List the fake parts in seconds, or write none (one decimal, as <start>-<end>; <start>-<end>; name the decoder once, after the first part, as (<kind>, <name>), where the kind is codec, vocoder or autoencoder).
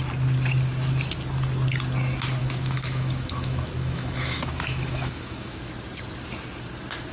2.4-5.7 (autoencoder, DAC-VAE)